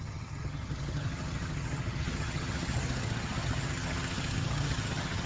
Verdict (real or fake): fake